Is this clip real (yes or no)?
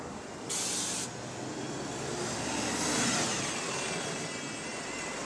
yes